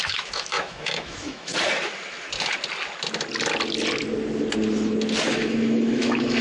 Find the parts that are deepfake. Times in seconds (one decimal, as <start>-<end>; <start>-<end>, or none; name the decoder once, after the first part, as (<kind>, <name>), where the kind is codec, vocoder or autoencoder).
0.0-1.5 (autoencoder, DAC-VAE); 5.3-6.4